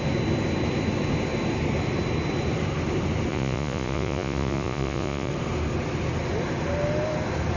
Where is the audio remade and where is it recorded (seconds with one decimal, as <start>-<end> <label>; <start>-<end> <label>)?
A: 0.0-3.3 recorded; 3.3-5.3 remade; 5.3-7.6 recorded